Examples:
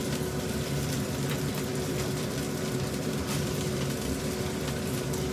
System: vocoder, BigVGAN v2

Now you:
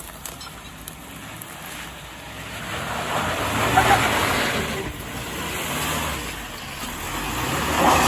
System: none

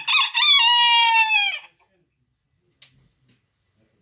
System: none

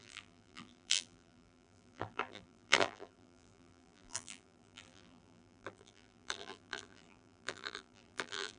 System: vocoder, BigVGAN v2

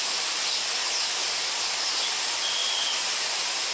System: none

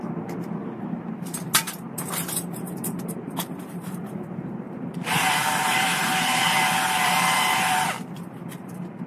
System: vocoder, BigVGAN v2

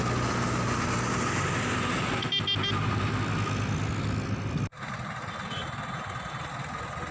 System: none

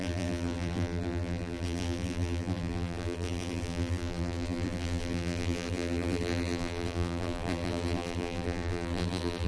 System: vocoder, BigVGAN v2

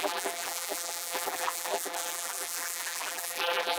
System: vocoder, BigVGAN v2